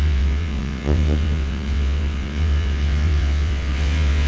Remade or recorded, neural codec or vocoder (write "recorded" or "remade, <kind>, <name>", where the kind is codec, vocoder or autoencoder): remade, vocoder, WaveNeXt